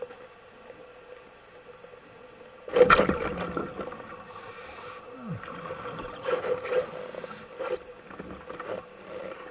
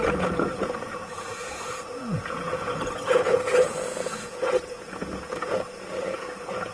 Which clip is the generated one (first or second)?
second